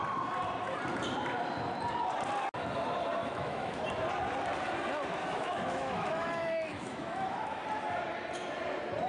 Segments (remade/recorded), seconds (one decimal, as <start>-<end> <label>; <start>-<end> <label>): 0.0-3.2 recorded; 3.2-3.8 remade; 3.8-5.2 recorded; 5.2-7.6 remade; 7.6-9.1 recorded